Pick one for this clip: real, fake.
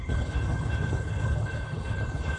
fake